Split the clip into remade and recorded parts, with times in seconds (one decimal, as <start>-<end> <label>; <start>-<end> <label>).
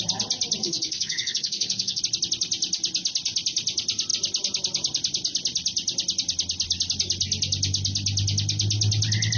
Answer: 0.0-0.6 recorded; 0.6-2.0 remade; 2.0-9.4 recorded